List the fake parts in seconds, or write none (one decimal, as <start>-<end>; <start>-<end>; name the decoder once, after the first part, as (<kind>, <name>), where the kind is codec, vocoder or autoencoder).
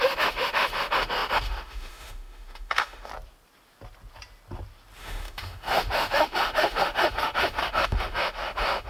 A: 0.0-3.1 (autoencoder, DAC-VAE); 5.0-8.9